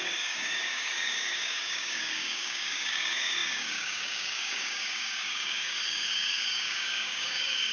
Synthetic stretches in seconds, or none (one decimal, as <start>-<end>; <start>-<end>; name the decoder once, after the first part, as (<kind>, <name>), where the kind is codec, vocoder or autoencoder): 0.0-7.7 (codec, DAC)